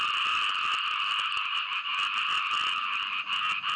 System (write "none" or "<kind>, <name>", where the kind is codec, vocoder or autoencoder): none